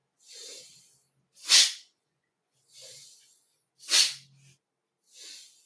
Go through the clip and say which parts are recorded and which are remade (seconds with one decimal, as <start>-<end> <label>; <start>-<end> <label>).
0.0-1.4 recorded; 1.4-3.7 remade; 3.7-5.7 recorded